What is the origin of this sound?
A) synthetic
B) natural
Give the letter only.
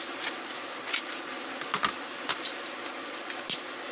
B